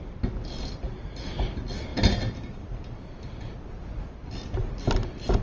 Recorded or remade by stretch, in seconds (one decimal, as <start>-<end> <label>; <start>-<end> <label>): 0.0-5.4 recorded